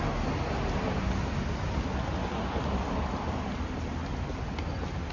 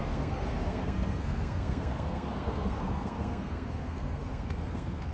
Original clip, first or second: first